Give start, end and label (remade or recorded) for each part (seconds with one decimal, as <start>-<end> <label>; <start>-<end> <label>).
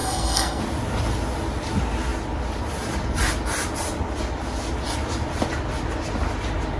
0.0-0.6 remade; 0.6-6.8 recorded